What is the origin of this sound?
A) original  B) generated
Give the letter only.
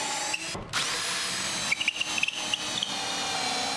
A